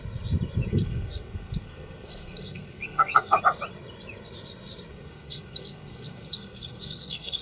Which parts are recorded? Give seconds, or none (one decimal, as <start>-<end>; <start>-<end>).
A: 0.0-0.7; 3.4-4.9